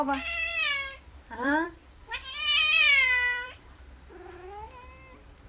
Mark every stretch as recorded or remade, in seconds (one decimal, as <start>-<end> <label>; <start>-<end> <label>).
0.0-0.5 recorded; 0.5-3.8 remade; 3.8-5.5 recorded